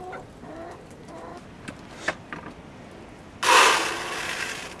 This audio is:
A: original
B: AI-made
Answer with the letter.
A